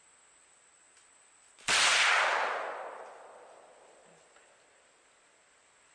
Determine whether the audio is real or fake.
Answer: real